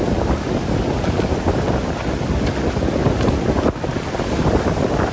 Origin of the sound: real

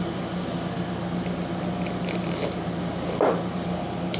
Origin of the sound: real